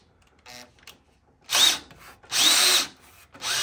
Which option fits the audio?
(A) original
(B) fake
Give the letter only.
A